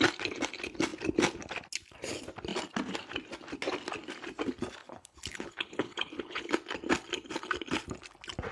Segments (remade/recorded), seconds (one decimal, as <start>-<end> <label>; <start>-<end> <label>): 0.0-4.8 recorded; 4.8-6.5 remade; 6.5-8.5 recorded